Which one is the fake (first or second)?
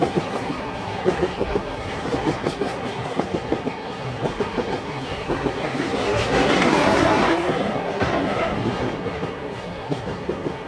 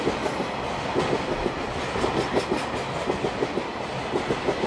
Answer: first